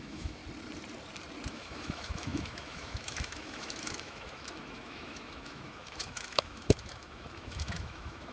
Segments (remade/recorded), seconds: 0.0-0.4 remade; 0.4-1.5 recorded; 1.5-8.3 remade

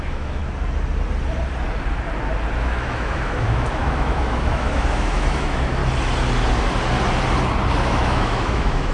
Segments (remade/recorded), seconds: 0.0-0.4 remade; 0.4-2.6 recorded; 2.6-5.8 remade; 5.8-7.8 recorded; 7.8-8.9 remade

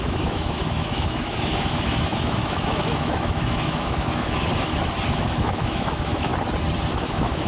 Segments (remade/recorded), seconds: 0.0-4.5 remade; 4.5-5.1 recorded; 5.1-6.3 remade; 6.3-6.9 recorded; 6.9-7.5 remade